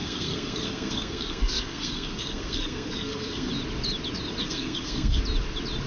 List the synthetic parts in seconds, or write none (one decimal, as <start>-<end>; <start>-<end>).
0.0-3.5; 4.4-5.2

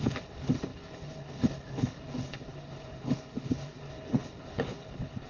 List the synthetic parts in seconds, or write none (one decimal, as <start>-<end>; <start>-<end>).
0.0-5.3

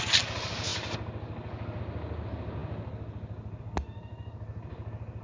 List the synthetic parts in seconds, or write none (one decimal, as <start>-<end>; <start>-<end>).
none

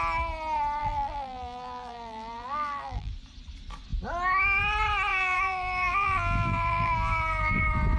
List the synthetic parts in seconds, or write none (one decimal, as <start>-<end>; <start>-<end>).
0.8-3.1; 5.1-7.6

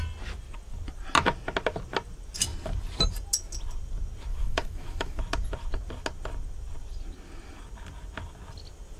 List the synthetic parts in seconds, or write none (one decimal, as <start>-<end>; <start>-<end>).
4.3-5.2

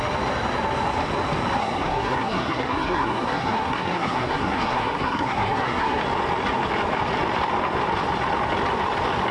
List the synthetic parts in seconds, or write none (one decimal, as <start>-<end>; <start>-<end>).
1.6-6.0

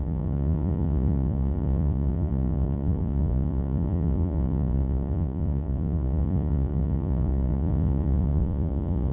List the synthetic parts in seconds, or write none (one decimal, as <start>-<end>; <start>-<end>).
0.0-9.1

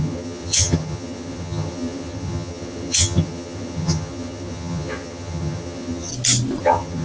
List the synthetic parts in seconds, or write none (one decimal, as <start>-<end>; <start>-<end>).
0.0-6.1; 6.6-7.0